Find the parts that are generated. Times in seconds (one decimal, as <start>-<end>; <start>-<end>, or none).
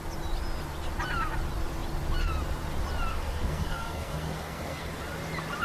3.1-4.9